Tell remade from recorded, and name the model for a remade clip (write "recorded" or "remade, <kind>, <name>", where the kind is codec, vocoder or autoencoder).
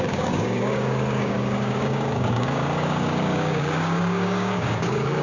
remade, codec, DAC